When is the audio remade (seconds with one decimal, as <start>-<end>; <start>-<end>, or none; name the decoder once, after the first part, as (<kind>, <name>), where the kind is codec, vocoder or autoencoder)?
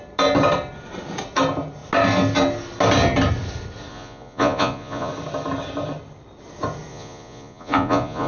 3.9-5.1 (vocoder, Vocos); 6.9-8.3